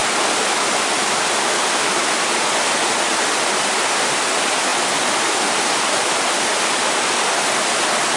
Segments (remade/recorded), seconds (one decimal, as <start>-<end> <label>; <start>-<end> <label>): 0.0-8.2 recorded

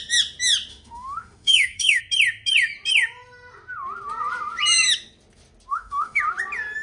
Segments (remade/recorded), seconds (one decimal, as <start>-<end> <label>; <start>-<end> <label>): 0.0-0.7 recorded; 0.7-2.0 remade; 2.0-5.7 recorded; 5.7-6.2 remade; 6.2-6.8 recorded

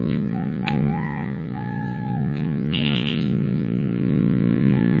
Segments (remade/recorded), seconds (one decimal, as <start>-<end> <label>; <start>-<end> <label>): 0.0-5.0 remade

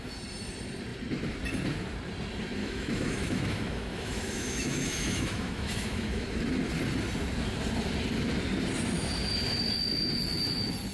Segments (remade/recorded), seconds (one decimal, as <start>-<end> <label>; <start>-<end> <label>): 0.0-2.6 recorded; 2.6-6.4 remade; 6.4-10.9 recorded

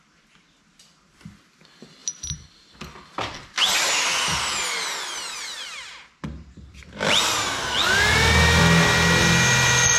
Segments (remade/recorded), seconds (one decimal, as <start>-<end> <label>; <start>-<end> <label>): 0.0-10.0 recorded

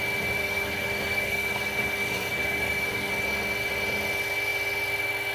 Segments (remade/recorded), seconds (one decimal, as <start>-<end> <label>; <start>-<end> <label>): 0.0-0.4 recorded; 0.4-3.1 remade; 3.1-5.3 recorded

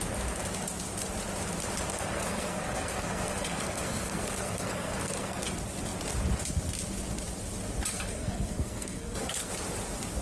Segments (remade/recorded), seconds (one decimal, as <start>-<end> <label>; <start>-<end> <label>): 0.0-1.9 recorded; 1.9-5.4 remade; 5.4-7.9 recorded; 7.9-9.5 remade; 9.5-10.2 recorded